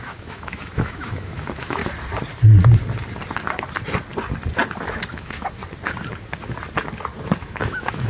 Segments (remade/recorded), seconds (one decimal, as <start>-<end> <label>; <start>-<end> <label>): 0.0-1.8 remade; 1.8-5.1 recorded; 5.1-5.6 remade; 5.6-7.4 recorded; 7.4-8.1 remade